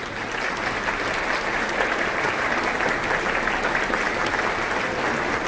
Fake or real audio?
real